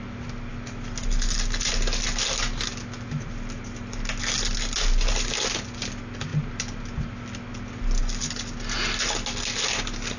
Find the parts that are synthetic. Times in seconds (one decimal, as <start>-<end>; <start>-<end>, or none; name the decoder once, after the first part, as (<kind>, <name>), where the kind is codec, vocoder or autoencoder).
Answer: none